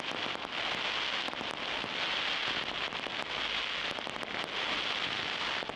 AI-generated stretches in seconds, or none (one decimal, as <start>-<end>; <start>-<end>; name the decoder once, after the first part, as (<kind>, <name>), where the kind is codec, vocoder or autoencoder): 2.4-3.0 (vocoder, BigVGAN v2)